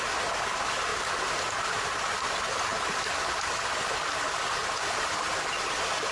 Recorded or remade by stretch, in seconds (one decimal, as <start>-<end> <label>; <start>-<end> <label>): 0.0-6.1 recorded